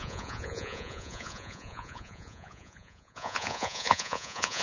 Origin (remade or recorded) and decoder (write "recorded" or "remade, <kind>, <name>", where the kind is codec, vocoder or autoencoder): remade, vocoder, Vocos